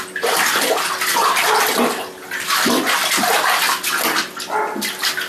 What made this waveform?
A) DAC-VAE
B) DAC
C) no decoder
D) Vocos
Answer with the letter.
C